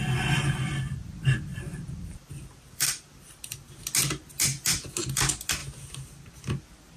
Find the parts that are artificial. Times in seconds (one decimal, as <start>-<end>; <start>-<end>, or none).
1.5-3.7